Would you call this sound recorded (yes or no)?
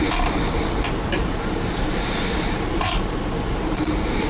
no